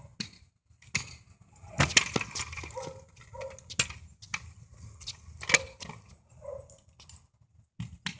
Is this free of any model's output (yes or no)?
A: yes